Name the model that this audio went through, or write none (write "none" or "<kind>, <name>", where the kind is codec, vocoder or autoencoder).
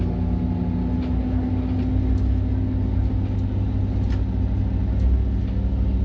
none